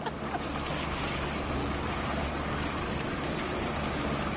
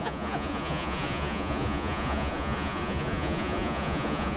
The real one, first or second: first